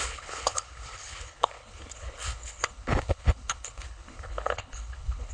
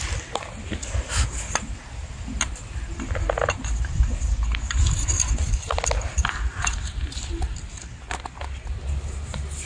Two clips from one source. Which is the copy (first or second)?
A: first